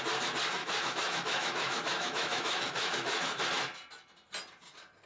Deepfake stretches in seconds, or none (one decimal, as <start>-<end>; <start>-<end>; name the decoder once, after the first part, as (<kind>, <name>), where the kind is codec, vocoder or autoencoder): 0.6-3.4 (autoencoder, DAC-VAE)